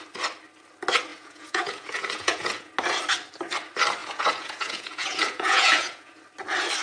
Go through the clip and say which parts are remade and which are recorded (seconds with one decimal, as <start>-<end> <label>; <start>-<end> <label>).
0.0-1.1 recorded; 1.1-2.7 remade; 2.7-4.0 recorded; 4.0-6.2 remade; 6.2-6.8 recorded